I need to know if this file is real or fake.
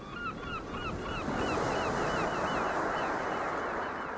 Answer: real